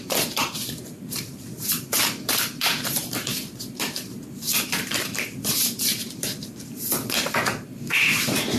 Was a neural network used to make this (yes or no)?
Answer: yes